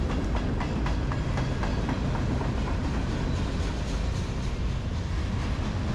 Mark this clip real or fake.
real